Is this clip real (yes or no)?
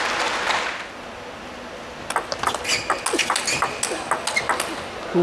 yes